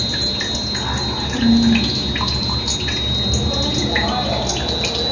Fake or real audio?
real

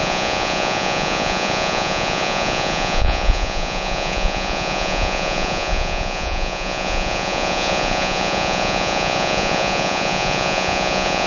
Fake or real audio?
fake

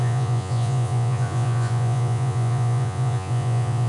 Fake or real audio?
fake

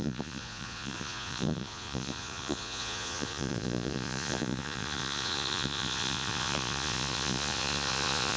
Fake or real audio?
fake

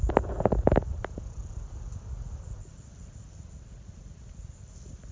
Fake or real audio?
real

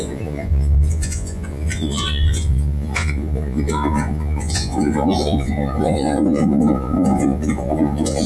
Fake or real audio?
fake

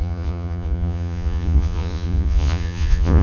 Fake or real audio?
fake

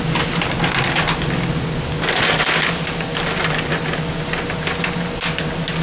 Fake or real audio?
real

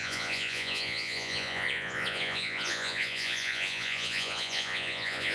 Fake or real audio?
fake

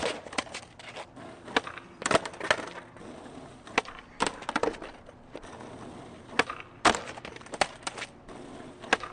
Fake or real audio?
real